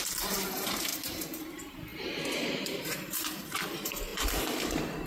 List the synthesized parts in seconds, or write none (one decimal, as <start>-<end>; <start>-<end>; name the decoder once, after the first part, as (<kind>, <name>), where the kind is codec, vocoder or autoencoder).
0.0-0.9 (vocoder, BigVGAN v2); 1.4-4.1